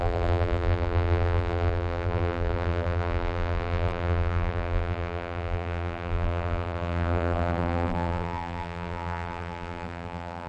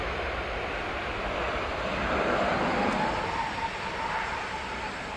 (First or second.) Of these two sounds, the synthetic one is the first